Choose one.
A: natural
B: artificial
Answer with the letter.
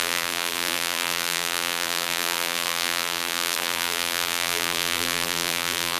B